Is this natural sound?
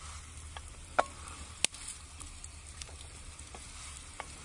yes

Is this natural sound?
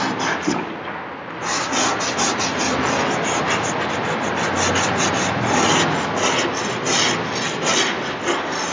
yes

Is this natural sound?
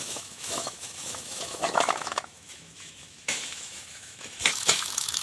no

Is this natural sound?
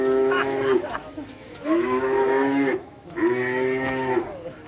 no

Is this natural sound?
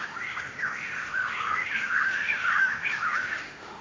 no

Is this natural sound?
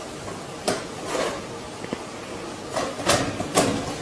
yes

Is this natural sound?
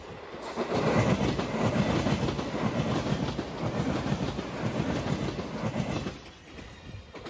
yes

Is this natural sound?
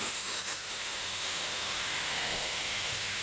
no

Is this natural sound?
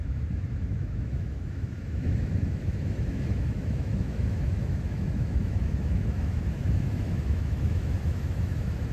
no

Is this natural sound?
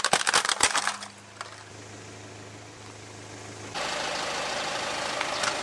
yes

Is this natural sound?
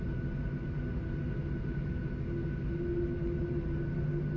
yes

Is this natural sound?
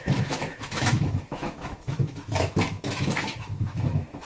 no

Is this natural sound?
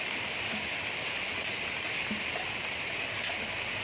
yes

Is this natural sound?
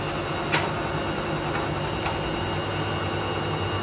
yes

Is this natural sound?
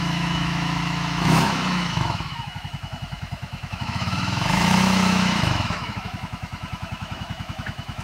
no